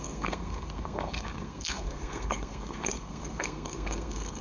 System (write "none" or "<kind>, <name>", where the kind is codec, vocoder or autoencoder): codec, SNAC